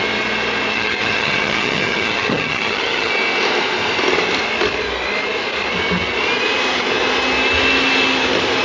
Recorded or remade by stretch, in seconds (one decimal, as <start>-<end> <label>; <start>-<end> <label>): 0.0-0.7 recorded; 0.7-3.1 remade; 3.1-8.6 recorded